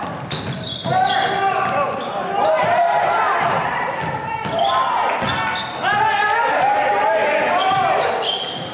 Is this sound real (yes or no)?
yes